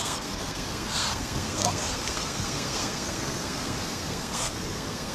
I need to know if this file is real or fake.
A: fake